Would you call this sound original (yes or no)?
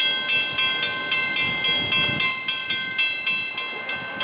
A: yes